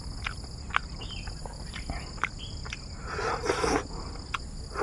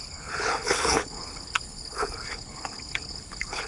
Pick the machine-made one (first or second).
second